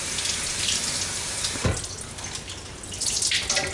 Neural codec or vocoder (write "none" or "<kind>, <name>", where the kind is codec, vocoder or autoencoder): none